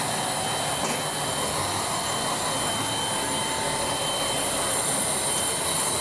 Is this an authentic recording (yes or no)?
yes